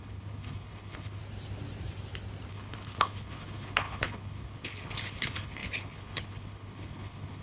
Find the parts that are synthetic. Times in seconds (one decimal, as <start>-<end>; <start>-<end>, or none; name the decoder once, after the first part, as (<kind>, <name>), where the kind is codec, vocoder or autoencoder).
0.0-1.2 (codec, HILCodec); 2.5-7.4